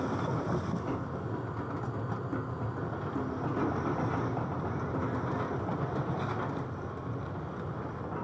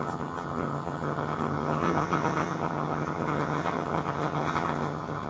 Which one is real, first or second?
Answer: first